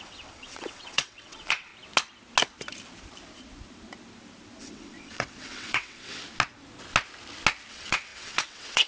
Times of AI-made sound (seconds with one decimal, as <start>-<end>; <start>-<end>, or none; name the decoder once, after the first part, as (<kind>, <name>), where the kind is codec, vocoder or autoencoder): 0.0-1.7 (vocoder, WaveNeXt); 4.6-6.2; 7.7-8.9